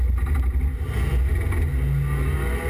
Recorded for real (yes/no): yes